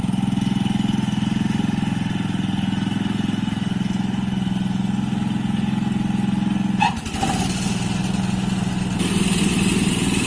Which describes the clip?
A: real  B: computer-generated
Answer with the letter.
A